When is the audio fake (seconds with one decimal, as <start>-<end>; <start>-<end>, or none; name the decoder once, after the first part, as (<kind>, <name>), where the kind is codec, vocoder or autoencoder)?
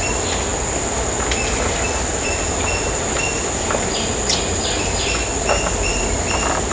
none